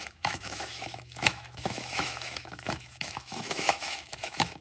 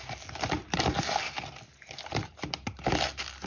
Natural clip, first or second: second